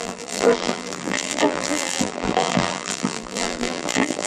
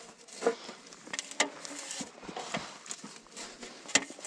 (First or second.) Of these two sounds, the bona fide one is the second